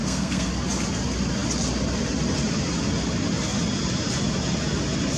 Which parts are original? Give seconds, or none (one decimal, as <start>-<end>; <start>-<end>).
0.5-5.2